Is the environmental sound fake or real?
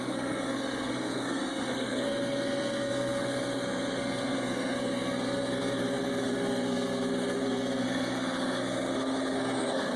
fake